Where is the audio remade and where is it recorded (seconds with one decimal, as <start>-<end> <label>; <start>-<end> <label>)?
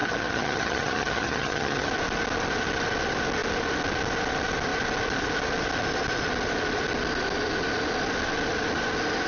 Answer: 0.0-1.9 remade; 1.9-9.3 recorded